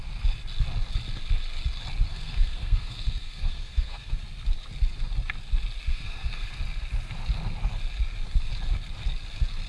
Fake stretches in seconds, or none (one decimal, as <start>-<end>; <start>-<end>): 2.1-4.2; 5.9-6.6